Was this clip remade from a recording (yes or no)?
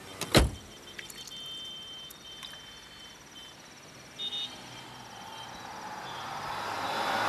no